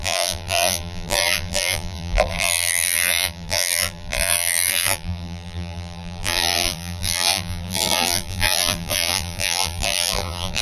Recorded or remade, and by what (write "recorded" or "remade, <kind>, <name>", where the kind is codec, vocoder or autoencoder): remade, vocoder, BigVGAN v2